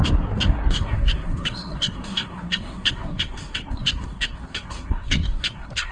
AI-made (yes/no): yes